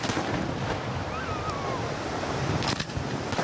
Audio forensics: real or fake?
real